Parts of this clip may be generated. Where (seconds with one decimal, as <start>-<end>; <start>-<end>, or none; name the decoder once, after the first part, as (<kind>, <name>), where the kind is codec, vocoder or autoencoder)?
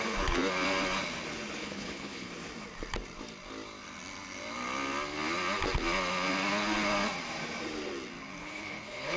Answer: 1.6-2.3 (codec, HILCodec); 8.4-9.2